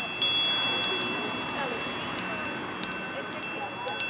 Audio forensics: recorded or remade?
recorded